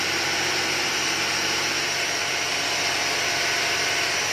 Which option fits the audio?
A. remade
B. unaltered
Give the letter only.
B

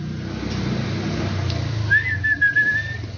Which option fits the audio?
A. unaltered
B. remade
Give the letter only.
A